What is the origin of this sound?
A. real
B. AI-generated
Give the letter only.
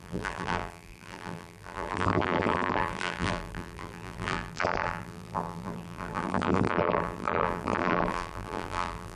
B